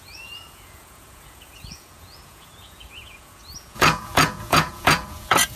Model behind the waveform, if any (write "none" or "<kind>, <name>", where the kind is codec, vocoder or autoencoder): vocoder, Vocos